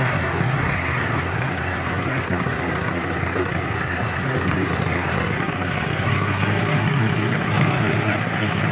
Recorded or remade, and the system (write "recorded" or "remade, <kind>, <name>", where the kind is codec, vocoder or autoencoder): remade, codec, SNAC